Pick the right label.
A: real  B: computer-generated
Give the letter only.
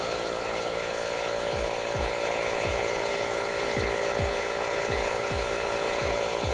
B